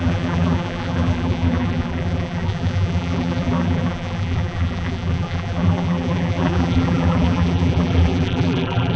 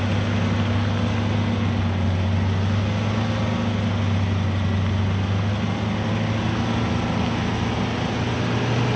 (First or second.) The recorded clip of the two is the second